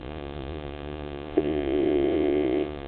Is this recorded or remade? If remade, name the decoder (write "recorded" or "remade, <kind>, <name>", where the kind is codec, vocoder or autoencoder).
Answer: remade, vocoder, Vocos